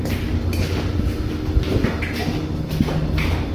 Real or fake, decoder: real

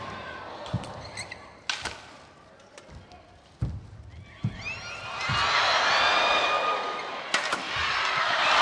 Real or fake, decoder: real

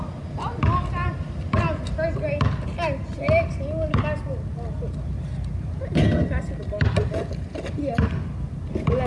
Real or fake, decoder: real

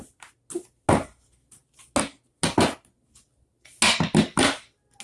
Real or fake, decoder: real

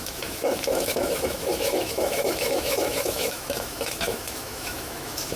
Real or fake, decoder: fake, autoencoder, DAC-VAE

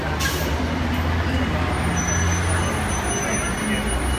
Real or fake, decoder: real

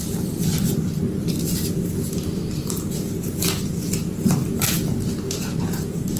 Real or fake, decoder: real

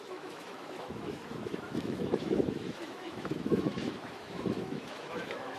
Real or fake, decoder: fake, autoencoder, DAC-VAE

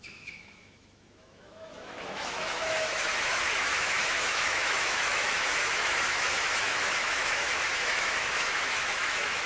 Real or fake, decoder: fake, autoencoder, DAC-VAE